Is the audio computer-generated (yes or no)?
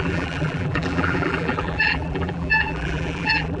yes